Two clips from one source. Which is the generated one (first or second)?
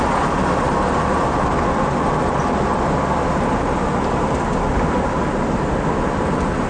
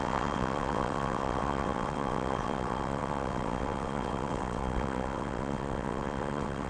second